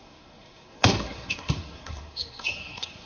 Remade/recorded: remade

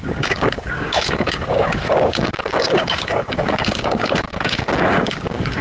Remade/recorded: remade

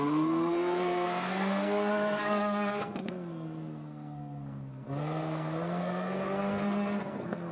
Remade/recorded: remade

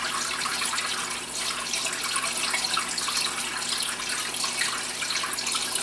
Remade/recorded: recorded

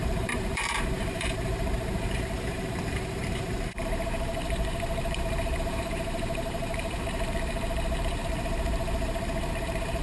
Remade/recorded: remade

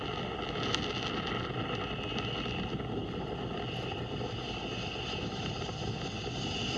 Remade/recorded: recorded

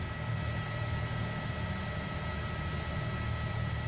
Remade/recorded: recorded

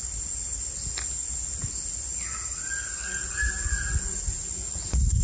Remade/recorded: recorded